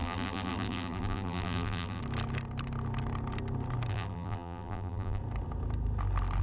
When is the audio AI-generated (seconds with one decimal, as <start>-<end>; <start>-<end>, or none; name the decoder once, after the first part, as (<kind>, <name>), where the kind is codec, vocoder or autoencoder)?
0.0-2.0 (vocoder, BigVGAN v2); 3.9-5.2

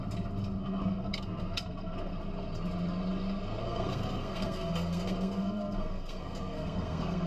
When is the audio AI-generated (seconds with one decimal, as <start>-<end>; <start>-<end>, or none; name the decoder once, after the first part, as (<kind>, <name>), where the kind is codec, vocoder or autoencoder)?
0.6-2.1 (codec, SNAC); 3.6-7.3

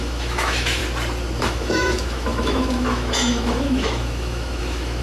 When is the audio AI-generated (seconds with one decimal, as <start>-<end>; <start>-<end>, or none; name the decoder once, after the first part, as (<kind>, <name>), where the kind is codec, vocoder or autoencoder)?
0.0-0.8 (autoencoder, DAC-VAE); 1.4-5.0

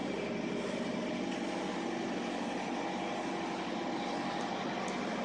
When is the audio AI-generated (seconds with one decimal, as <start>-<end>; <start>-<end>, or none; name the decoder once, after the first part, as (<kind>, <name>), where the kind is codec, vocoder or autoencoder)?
none

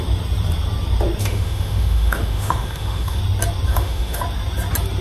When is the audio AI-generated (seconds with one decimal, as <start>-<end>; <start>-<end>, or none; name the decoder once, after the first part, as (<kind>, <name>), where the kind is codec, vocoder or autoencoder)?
1.2-3.2 (autoencoder, DAC-VAE); 3.7-4.2

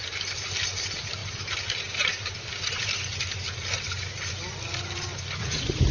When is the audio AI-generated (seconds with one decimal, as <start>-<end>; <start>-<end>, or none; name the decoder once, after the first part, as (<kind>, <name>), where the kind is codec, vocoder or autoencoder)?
5.4-5.9 (vocoder, Vocos)

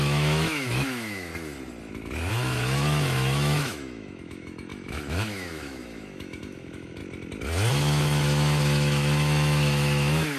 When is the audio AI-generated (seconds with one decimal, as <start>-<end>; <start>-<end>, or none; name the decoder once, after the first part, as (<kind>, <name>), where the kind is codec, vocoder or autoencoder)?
0.0-1.3 (autoencoder, DAC-VAE); 2.3-7.0; 7.7-10.4